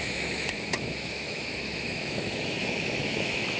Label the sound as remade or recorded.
remade